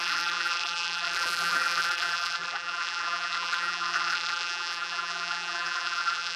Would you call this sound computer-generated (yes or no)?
yes